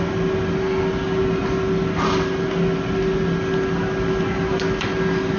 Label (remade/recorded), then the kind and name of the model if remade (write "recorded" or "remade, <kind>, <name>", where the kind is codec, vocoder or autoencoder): recorded